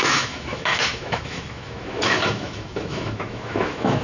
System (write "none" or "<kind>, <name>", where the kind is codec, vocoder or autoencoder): autoencoder, DAC-VAE